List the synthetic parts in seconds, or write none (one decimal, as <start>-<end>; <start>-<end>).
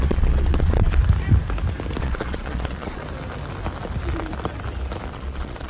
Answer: 0.0-1.0; 2.0-3.0; 5.1-5.7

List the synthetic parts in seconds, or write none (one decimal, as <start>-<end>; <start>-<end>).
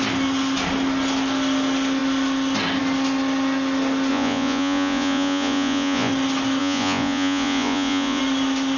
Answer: 4.1-6.1; 6.6-8.2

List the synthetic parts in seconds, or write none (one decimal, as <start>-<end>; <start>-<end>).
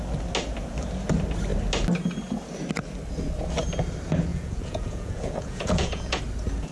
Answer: 4.3-6.2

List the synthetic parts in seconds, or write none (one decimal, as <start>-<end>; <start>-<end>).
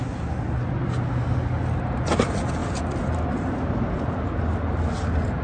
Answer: none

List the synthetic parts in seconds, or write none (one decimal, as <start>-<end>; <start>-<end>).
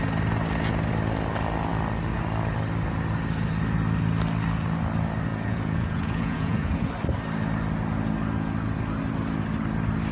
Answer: 5.3-6.9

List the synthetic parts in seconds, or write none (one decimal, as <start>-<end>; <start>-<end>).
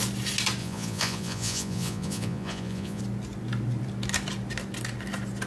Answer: 0.6-3.0